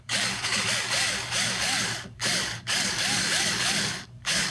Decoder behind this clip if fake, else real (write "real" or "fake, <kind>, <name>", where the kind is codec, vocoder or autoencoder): fake, codec, DAC